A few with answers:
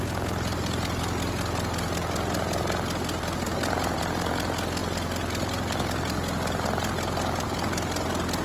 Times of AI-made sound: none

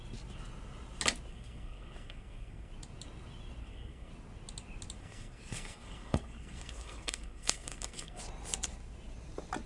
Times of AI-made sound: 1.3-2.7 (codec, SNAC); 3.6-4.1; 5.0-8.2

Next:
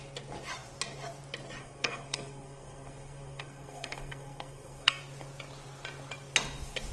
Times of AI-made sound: 1.6-5.0 (codec, SNAC)

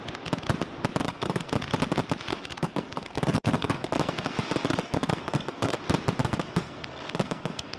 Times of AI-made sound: 1.0-1.5 (codec, SNAC); 2.3-5.8; 6.2-7.8

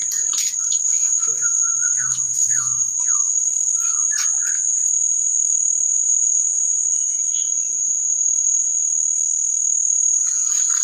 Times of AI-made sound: 0.4-3.7 (codec, SNAC)

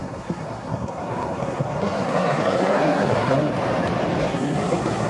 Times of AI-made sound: 0.0-3.5 (codec, SNAC); 4.2-5.1